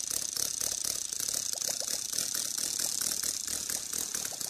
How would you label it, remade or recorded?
recorded